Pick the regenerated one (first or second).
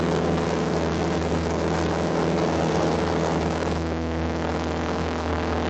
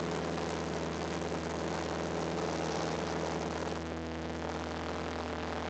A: first